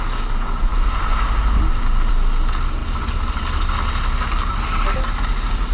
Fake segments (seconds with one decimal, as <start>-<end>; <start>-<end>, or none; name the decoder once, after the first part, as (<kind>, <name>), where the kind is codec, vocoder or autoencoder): none